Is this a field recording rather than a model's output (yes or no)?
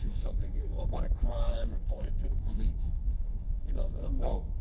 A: no